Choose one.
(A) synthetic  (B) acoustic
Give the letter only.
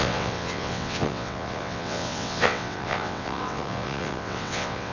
A